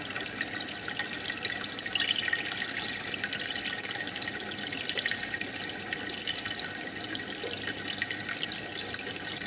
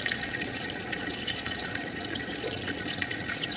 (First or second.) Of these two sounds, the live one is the first